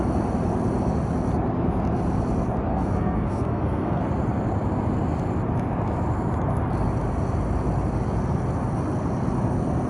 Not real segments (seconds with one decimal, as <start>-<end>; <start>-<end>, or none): 2.7-4.1